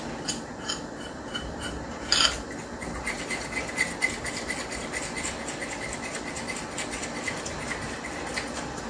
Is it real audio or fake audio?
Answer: real